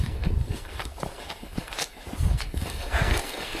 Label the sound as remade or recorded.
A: remade